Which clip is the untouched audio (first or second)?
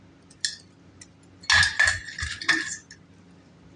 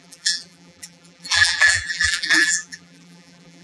first